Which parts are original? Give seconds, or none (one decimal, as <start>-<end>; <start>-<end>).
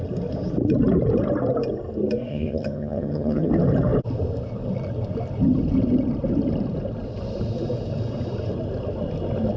0.0-2.3; 3.5-9.6